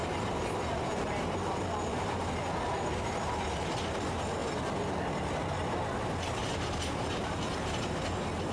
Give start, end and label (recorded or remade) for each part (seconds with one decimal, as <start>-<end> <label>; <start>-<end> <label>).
0.0-1.6 remade; 1.6-6.4 recorded; 6.4-8.0 remade; 8.0-8.5 recorded